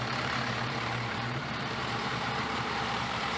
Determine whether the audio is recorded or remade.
remade